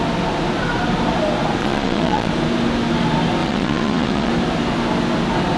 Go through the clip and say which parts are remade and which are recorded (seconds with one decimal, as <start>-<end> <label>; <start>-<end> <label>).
0.0-1.6 recorded; 1.6-2.3 remade; 2.3-3.4 recorded; 3.4-4.3 remade; 4.3-5.6 recorded